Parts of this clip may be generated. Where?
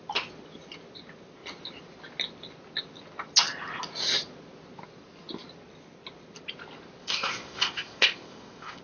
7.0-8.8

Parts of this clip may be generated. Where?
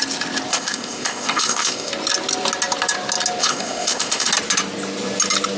0.5-1.9; 3.4-4.3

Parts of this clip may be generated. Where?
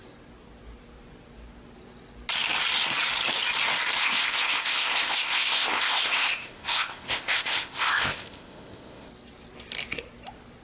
4.0-9.1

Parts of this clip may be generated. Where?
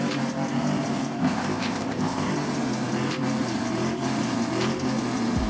1.2-2.3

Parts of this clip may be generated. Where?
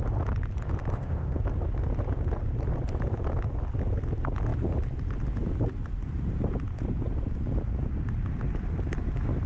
0.9-1.4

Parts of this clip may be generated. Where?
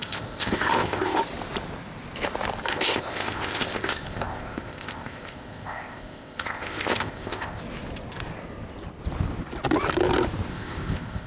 0.0-1.2; 2.7-7.6; 10.5-11.3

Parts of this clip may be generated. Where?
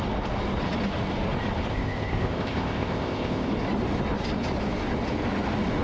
1.7-3.5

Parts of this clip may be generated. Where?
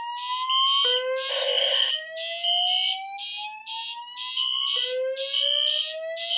1.3-1.9